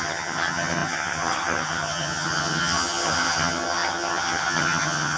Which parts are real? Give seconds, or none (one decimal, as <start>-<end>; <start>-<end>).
none